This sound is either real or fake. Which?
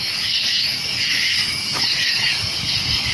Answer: fake